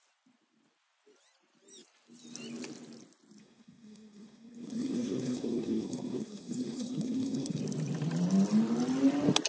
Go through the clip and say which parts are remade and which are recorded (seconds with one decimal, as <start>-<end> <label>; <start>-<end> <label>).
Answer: 0.0-3.4 recorded; 3.4-7.6 remade; 7.6-9.5 recorded